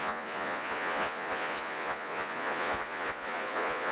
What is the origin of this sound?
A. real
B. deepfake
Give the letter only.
B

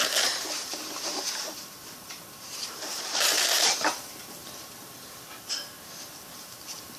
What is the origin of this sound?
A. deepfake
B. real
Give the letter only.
A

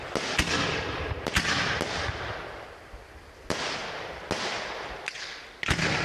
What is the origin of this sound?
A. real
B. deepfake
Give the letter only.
A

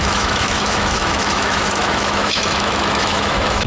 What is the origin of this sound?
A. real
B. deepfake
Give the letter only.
B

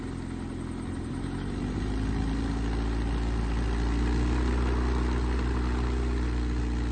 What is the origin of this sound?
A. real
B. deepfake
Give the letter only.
A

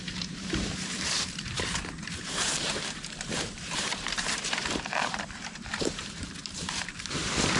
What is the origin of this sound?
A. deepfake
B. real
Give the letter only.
A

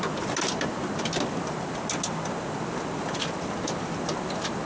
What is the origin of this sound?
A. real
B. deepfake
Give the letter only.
A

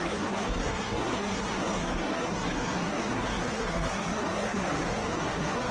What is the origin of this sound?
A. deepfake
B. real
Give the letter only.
A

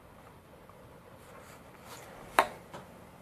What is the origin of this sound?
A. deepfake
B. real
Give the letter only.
B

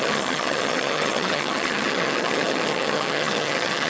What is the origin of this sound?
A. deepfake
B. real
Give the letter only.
A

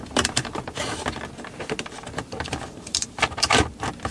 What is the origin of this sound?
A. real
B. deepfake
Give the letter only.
A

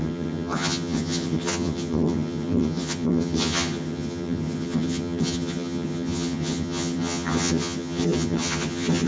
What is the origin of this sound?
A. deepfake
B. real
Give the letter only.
A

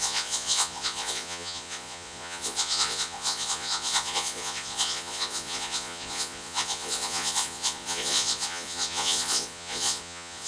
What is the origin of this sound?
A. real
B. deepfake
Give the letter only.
B